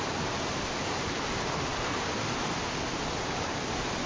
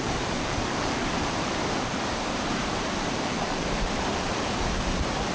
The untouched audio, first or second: first